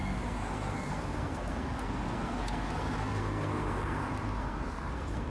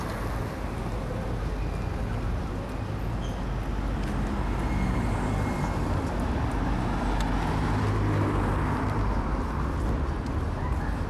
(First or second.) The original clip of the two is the second